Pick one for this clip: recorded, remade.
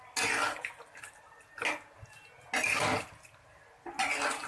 recorded